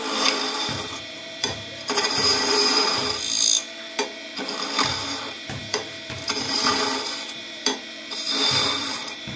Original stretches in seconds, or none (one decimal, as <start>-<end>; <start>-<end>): 3.0-4.9